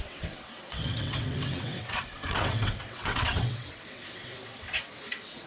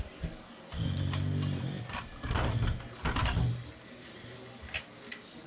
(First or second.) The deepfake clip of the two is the first